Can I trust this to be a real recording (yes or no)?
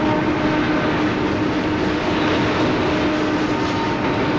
yes